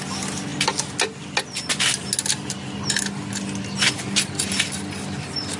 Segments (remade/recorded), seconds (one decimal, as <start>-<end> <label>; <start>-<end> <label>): 0.0-5.6 recorded